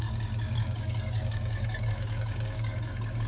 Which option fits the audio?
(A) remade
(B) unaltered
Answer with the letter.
A